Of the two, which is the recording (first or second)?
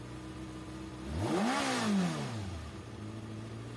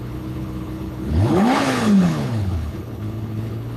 first